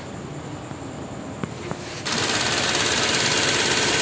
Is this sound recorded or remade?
recorded